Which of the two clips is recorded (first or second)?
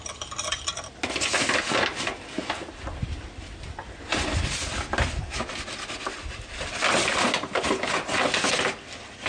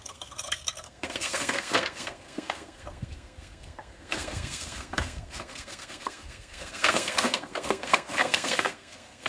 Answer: first